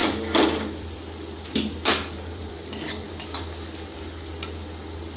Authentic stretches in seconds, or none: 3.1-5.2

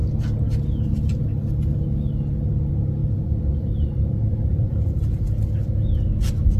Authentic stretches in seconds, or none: 0.0-3.0; 5.2-6.6

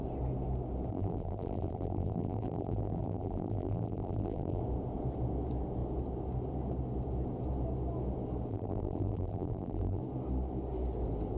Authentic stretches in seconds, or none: 0.0-0.9; 4.6-8.5; 10.0-11.4

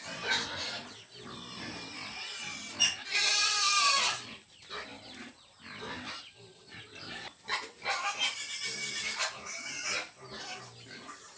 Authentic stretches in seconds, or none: 0.0-11.4

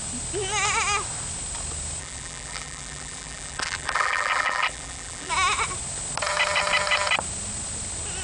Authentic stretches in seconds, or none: 0.0-2.0; 5.3-8.2